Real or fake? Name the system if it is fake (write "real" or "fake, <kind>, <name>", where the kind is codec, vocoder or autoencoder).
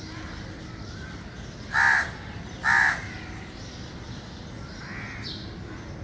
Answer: real